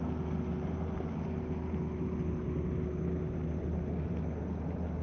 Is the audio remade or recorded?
recorded